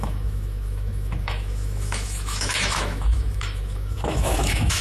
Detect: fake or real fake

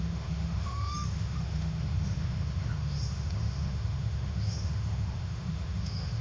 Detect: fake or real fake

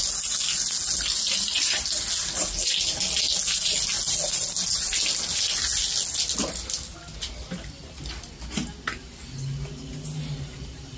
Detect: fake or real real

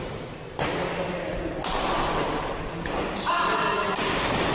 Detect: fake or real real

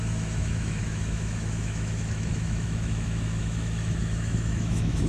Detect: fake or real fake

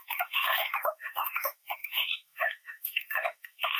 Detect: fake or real fake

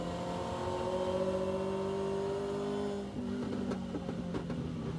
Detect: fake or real real